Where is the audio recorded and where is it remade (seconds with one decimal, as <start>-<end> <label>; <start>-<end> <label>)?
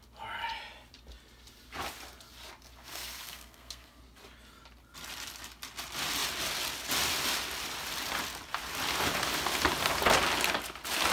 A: 0.0-2.8 recorded; 2.8-4.0 remade; 4.0-11.1 recorded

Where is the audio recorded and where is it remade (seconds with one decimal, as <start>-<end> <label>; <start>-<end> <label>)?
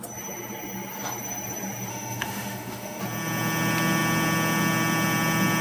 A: 0.0-1.9 recorded; 1.9-3.0 remade; 3.0-5.6 recorded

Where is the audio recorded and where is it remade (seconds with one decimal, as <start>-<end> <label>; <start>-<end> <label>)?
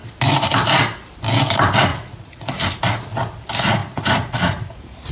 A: 0.0-1.9 recorded; 1.9-2.6 remade; 2.6-3.8 recorded; 3.8-5.1 remade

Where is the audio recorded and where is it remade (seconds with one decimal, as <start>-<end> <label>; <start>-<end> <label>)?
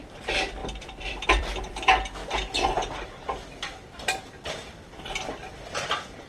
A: 0.0-0.6 recorded; 0.6-1.5 remade; 1.5-2.2 recorded; 2.2-6.3 remade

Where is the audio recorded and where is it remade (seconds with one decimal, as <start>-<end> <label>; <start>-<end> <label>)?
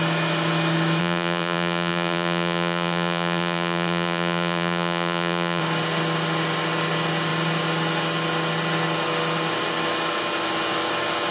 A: 0.0-1.0 recorded; 1.0-5.6 remade; 5.6-11.3 recorded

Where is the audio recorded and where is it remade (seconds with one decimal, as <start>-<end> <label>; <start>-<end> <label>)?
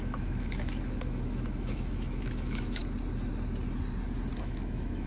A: 0.0-2.8 remade; 2.8-4.4 recorded; 4.4-5.1 remade